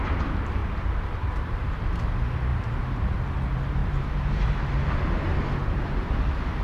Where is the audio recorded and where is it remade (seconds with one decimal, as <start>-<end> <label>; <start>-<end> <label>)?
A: 0.0-0.6 recorded; 0.6-1.5 remade; 1.5-2.5 recorded; 2.5-3.2 remade; 3.2-3.8 recorded; 3.8-4.3 remade; 4.3-5.6 recorded; 5.6-6.1 remade; 6.1-6.6 recorded